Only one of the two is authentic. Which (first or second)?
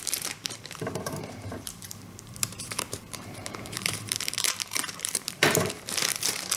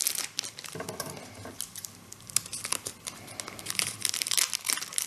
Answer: second